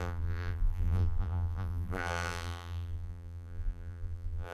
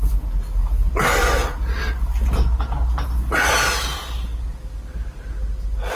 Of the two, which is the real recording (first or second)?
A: second